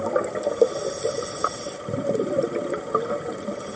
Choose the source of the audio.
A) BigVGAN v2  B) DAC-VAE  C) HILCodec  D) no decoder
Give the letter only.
D